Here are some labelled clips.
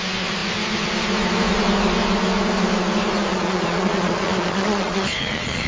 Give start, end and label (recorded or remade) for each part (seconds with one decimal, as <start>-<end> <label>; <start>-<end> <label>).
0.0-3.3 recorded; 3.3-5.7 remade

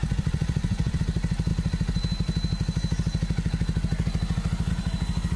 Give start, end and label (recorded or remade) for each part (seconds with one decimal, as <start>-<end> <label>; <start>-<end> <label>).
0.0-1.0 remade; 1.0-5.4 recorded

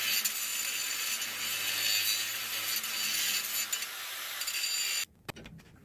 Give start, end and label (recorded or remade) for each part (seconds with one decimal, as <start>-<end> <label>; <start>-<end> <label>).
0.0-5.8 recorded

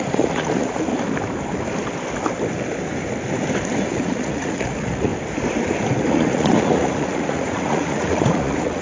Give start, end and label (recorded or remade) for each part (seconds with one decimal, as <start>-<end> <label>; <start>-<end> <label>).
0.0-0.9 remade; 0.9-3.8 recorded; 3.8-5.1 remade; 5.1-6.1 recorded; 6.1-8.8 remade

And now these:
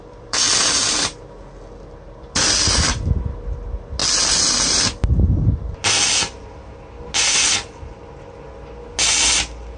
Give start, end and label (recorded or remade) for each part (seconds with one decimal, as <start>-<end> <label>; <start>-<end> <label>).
0.0-0.6 remade; 0.6-9.8 recorded

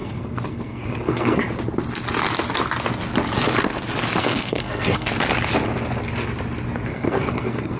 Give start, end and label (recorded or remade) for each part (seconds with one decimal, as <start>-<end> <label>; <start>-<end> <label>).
0.0-1.4 remade; 1.4-4.2 recorded; 4.2-5.1 remade; 5.1-6.9 recorded; 6.9-7.8 remade

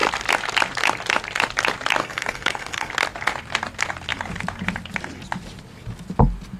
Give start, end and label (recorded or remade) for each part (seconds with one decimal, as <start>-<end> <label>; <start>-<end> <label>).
0.0-2.0 recorded; 2.0-2.9 remade; 2.9-6.6 recorded